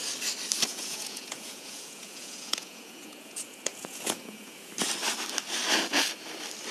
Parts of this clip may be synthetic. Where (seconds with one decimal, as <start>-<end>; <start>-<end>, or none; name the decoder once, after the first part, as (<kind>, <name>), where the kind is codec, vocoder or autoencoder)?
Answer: 0.7-4.7 (vocoder, Vocos)